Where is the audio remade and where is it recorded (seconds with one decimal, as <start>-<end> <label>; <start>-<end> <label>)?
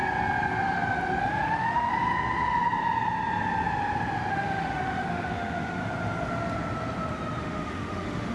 0.0-1.2 recorded; 1.2-1.9 remade; 1.9-4.3 recorded; 4.3-5.8 remade; 5.8-7.4 recorded; 7.4-8.3 remade